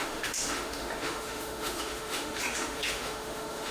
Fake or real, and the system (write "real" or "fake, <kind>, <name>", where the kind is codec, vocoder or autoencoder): fake, autoencoder, DAC-VAE